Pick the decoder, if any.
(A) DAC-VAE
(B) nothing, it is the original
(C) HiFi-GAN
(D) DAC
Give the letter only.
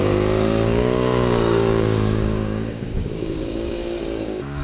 D